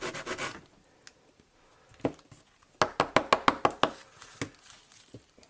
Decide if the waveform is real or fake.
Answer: real